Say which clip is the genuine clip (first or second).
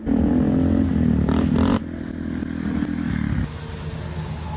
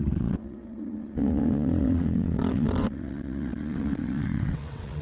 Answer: first